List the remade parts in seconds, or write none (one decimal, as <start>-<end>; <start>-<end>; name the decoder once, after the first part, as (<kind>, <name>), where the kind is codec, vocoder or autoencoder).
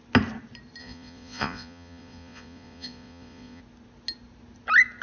0.8-3.6 (vocoder, Vocos)